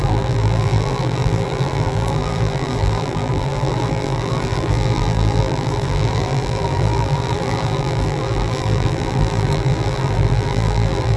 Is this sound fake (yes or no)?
yes